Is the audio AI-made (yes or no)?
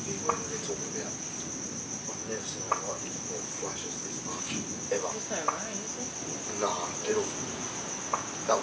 no